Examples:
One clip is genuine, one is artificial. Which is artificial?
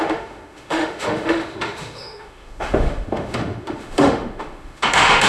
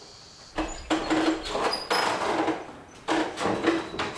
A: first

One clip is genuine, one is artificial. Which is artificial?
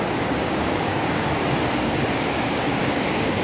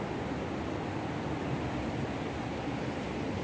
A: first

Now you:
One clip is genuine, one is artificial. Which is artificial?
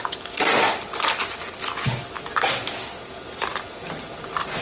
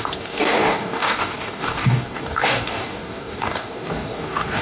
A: second